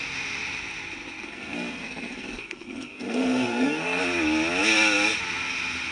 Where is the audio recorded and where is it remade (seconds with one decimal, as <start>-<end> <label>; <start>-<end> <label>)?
0.0-1.2 recorded; 1.2-4.0 remade; 4.0-5.9 recorded